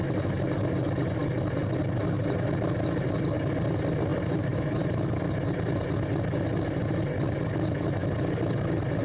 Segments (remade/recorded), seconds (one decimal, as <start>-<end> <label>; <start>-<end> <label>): 0.0-4.1 recorded; 4.1-5.0 remade; 5.0-9.0 recorded